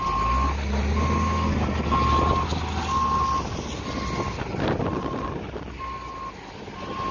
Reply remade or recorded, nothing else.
recorded